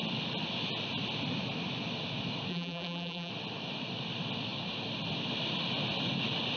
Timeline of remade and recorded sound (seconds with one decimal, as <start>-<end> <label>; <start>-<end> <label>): 0.0-2.5 recorded; 2.5-3.3 remade; 3.3-6.6 recorded